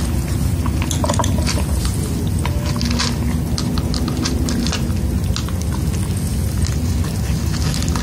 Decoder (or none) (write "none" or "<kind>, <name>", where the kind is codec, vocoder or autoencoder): none